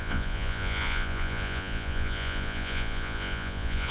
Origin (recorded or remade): remade